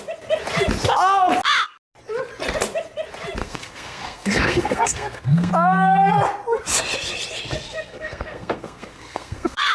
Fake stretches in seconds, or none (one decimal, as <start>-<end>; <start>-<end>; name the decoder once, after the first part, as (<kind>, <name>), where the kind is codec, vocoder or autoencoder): 3.4-5.5 (codec, SNAC); 7.9-9.7